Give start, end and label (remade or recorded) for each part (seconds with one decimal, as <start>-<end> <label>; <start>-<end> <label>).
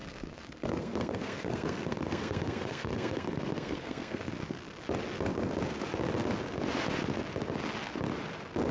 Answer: 0.0-4.3 remade; 4.3-8.7 recorded